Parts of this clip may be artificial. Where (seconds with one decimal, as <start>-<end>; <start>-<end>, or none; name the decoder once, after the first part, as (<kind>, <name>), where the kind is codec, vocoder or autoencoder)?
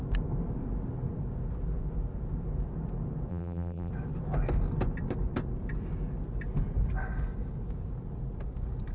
3.3-3.9 (vocoder, BigVGAN v2)